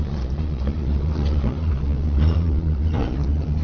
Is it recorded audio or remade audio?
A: remade